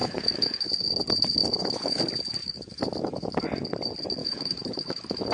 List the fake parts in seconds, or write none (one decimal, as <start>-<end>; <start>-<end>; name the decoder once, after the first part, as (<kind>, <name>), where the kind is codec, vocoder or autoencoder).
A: 0.0-0.7 (autoencoder, DAC-VAE); 1.4-2.0; 2.4-3.4; 4.2-5.3